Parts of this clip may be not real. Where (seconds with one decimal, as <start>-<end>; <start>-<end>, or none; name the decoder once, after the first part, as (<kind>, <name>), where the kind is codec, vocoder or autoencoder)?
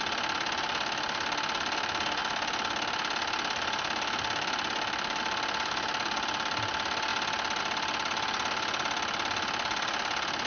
none